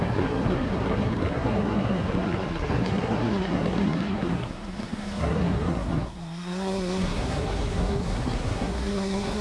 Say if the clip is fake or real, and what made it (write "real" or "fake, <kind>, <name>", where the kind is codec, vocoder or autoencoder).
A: fake, codec, SNAC